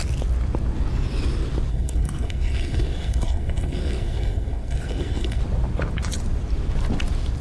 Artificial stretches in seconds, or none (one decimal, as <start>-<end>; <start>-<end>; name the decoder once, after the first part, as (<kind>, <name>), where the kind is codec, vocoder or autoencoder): 1.7-5.4 (codec, SNAC)